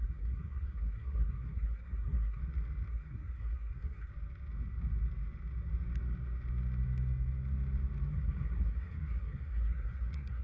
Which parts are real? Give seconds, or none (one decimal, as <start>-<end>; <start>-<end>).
2.4-2.9; 4.1-8.1